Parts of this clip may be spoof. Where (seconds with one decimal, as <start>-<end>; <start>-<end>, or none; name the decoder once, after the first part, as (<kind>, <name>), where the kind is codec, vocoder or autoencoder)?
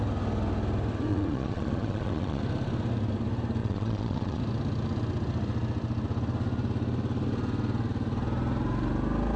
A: 1.1-2.4 (vocoder, Vocos); 3.6-4.4